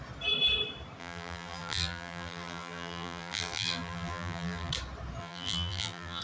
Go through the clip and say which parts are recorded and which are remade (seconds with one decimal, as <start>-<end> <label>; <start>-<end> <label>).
0.0-1.0 recorded; 1.0-4.7 remade; 4.7-5.2 recorded; 5.2-6.2 remade